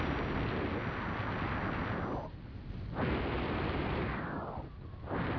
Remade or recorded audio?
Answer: recorded